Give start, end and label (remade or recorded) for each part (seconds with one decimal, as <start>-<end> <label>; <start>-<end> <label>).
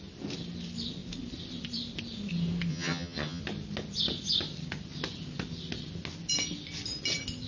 0.0-2.7 recorded; 2.7-3.4 remade; 3.4-7.5 recorded